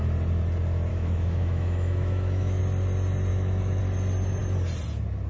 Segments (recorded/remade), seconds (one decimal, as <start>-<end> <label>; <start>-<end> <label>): 0.0-0.9 recorded; 0.9-2.6 remade; 2.6-3.3 recorded; 3.3-3.8 remade; 3.8-5.3 recorded